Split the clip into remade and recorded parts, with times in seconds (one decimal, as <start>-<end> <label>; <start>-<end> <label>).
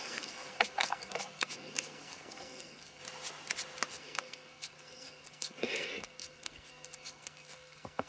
0.0-3.0 remade; 3.0-3.9 recorded; 3.9-8.1 remade